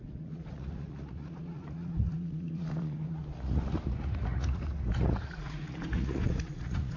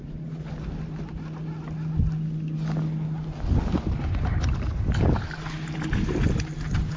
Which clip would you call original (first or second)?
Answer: second